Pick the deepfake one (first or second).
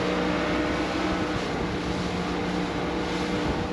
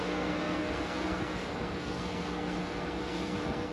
second